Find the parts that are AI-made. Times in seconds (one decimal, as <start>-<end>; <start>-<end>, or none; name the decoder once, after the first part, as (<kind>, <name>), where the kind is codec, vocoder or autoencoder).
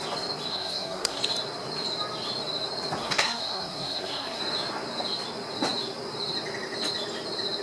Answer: 0.5-1.2 (codec, SNAC); 3.0-4.4